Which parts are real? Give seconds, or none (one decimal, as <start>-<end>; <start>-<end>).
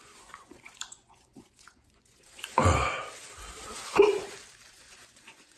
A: 2.6-4.7